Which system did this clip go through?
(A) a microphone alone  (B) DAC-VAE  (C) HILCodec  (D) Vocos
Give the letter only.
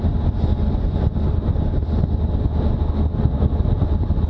A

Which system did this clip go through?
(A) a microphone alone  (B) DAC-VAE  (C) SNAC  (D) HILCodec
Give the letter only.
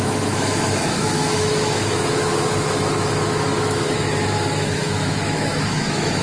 B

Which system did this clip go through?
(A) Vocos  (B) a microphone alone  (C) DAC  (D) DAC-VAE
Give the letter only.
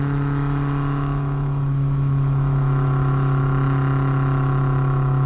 D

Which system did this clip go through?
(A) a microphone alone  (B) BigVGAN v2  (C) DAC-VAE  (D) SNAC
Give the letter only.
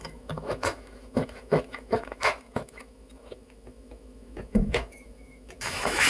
C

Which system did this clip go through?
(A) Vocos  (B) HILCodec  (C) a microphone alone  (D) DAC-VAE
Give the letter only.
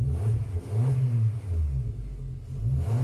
C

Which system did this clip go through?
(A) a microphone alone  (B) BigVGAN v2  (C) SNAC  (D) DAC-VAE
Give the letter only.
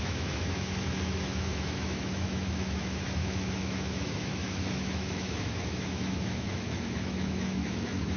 D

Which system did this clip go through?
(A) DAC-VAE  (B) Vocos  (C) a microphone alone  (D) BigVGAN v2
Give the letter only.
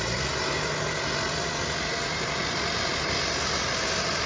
C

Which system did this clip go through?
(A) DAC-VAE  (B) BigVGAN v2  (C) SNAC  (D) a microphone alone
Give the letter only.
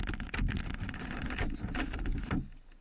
D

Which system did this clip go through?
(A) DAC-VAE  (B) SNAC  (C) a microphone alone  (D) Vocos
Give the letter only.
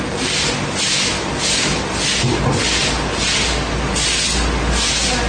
C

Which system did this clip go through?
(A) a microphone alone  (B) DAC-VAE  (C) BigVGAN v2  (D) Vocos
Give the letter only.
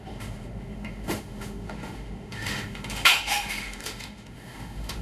B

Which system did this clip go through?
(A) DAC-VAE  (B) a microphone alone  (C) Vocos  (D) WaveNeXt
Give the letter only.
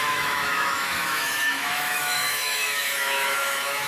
A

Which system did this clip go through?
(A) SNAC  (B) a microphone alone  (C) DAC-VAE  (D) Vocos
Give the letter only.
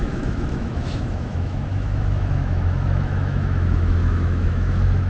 C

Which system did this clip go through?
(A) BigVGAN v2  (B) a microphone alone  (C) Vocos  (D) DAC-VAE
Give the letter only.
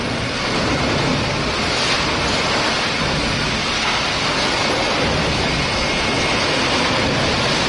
B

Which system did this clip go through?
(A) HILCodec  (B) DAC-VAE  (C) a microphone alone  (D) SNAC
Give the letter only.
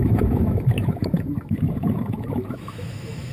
B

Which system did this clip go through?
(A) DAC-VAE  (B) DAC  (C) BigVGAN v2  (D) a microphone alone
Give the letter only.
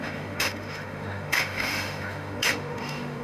A